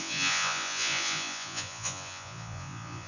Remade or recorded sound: remade